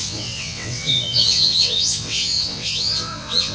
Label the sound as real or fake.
fake